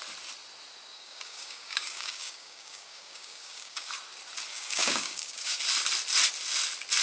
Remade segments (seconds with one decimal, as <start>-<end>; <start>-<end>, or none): 0.9-3.9; 4.5-5.6